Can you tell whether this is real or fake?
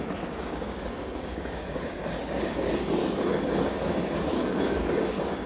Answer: fake